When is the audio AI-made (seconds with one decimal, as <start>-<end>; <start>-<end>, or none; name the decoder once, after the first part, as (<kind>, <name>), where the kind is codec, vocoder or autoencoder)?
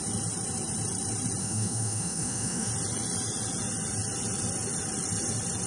1.4-2.7 (autoencoder, DAC-VAE)